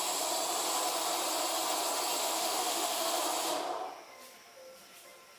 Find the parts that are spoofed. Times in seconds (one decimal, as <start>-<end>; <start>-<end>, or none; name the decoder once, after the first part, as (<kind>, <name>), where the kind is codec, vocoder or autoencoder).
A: 2.2-3.1 (autoencoder, DAC-VAE)